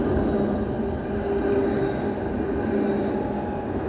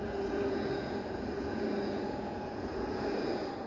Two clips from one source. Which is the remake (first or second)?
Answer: second